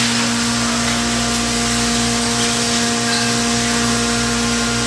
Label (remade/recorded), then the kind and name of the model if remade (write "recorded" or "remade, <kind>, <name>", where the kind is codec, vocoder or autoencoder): recorded